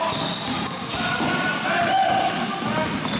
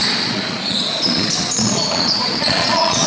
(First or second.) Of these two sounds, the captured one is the first